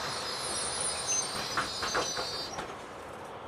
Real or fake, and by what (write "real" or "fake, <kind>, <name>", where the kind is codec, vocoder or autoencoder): fake, vocoder, BigVGAN v2